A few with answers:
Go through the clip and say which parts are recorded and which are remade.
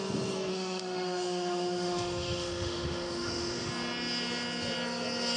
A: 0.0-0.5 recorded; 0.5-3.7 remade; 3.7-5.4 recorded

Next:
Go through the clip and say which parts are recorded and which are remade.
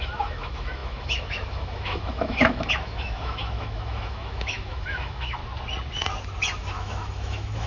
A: 0.0-5.4 remade; 5.4-6.6 recorded; 6.6-7.7 remade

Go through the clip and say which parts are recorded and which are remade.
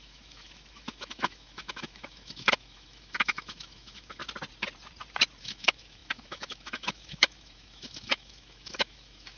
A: 0.0-4.2 remade; 4.2-5.4 recorded; 5.4-9.4 remade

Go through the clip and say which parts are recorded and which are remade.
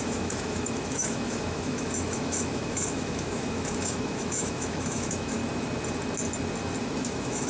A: 0.0-5.4 remade; 5.4-6.8 recorded; 6.8-7.5 remade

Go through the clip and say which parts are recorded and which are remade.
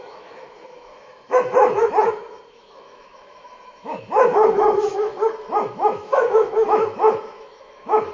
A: 0.0-5.1 remade; 5.1-5.7 recorded; 5.7-8.1 remade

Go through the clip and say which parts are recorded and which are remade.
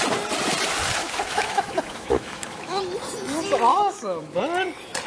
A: 0.0-1.0 recorded; 1.0-2.8 remade; 2.8-3.7 recorded; 3.7-4.4 remade; 4.4-5.1 recorded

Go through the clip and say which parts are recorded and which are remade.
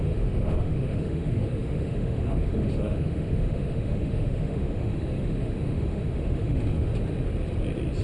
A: 0.0-6.9 remade; 6.9-8.0 recorded